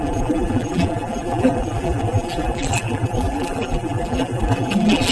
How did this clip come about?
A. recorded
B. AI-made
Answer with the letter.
B